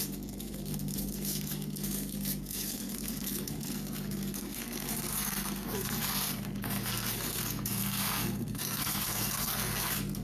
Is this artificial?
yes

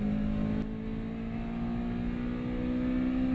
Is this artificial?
no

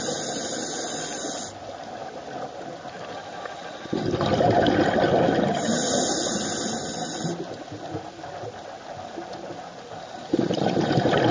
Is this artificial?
no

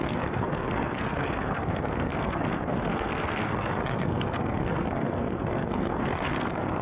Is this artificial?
yes